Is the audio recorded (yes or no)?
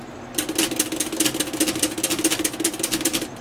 yes